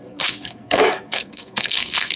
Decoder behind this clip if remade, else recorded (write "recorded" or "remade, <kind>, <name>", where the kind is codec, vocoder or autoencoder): remade, codec, SNAC